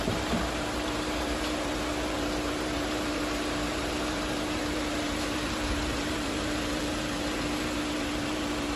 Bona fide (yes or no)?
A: no